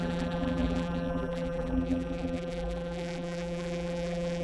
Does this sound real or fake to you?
fake